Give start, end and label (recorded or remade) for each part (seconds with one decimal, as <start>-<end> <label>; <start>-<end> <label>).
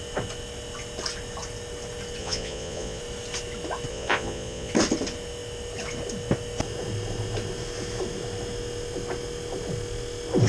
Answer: 0.0-2.2 recorded; 2.2-3.0 remade; 3.0-3.9 recorded; 3.9-4.7 remade; 4.7-10.5 recorded